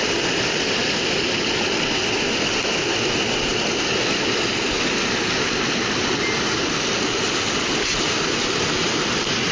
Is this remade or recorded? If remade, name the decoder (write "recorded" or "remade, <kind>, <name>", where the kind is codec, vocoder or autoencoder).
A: recorded